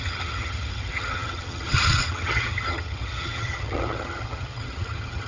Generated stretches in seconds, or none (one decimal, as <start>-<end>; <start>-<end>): 0.0-5.3